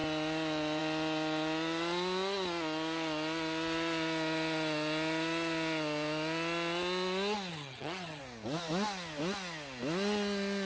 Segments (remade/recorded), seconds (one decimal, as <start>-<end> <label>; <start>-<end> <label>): 0.0-7.5 recorded; 7.5-8.2 remade; 8.2-10.7 recorded